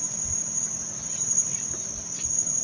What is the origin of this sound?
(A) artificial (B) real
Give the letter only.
B